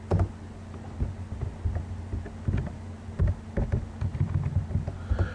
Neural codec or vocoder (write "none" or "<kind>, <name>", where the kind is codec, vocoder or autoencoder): none